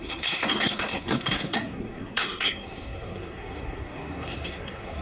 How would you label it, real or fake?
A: fake